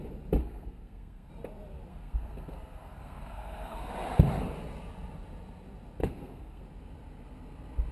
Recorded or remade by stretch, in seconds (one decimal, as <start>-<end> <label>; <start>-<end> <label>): 0.0-0.4 recorded; 0.4-1.3 remade; 1.3-1.9 recorded; 1.9-3.9 remade; 3.9-6.0 recorded; 6.0-6.6 remade; 6.6-7.9 recorded